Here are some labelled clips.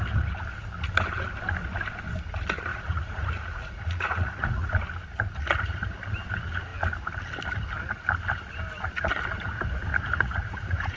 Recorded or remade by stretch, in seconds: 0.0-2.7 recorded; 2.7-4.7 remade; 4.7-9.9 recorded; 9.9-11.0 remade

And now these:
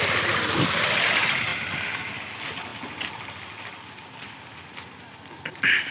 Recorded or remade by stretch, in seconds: 0.0-5.9 recorded

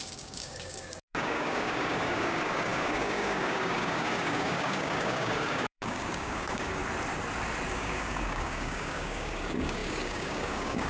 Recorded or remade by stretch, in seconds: 0.0-6.8 remade; 6.8-7.7 recorded; 7.7-10.9 remade